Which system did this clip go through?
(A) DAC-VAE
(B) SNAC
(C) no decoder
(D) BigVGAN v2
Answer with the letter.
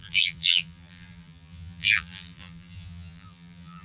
D